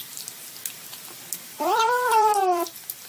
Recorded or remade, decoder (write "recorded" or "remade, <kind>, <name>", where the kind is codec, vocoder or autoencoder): remade, vocoder, BigVGAN v2